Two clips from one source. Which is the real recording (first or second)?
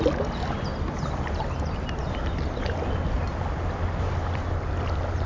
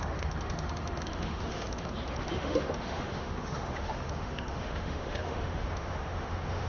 first